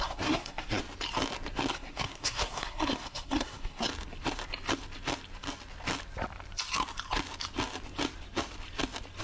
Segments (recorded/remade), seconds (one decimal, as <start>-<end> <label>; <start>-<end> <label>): 0.0-0.8 remade; 0.8-1.7 recorded; 1.7-3.9 remade; 3.9-9.2 recorded